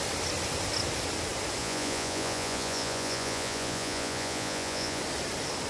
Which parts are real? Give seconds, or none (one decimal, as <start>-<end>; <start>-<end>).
0.0-1.6; 5.0-5.7